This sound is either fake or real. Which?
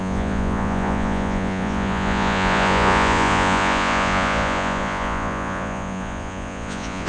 fake